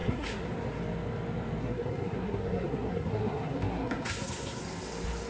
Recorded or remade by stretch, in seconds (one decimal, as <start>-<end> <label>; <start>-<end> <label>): 0.0-0.5 remade; 0.5-1.6 recorded; 1.6-4.6 remade; 4.6-5.3 recorded